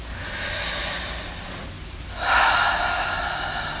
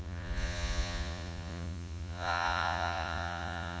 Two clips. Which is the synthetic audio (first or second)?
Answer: second